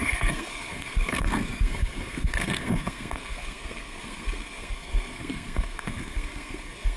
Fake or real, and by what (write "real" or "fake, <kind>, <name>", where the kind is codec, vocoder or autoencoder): fake, codec, SNAC